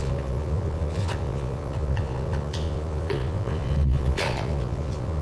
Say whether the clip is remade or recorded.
remade